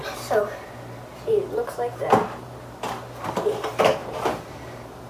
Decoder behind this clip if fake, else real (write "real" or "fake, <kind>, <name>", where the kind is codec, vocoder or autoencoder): fake, vocoder, BigVGAN v2